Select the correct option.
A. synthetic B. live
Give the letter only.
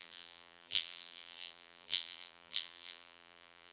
A